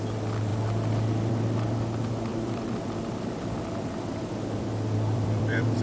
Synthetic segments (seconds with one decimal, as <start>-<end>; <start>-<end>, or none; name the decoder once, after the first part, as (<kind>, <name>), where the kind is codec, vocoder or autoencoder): 2.3-5.8 (vocoder, BigVGAN v2)